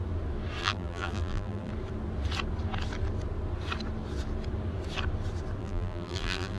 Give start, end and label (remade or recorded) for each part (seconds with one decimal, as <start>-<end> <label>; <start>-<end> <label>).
0.0-0.6 recorded; 0.6-1.7 remade; 1.7-5.6 recorded; 5.6-6.6 remade